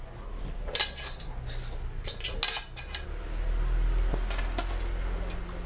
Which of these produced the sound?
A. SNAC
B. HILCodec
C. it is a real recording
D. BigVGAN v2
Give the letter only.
C